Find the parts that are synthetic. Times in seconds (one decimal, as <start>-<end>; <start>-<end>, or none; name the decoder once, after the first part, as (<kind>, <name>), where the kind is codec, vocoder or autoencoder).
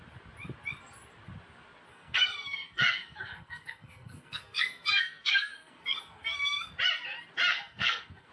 1.9-6.7 (codec, SNAC); 7.5-8.3